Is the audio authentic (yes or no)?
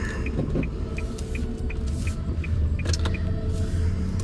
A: yes